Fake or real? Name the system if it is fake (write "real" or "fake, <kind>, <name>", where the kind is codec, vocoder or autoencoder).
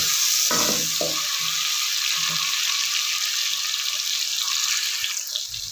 real